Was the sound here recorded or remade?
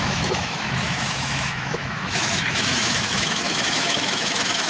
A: remade